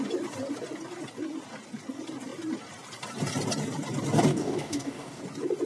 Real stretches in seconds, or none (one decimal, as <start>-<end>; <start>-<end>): 0.0-4.3; 5.2-5.7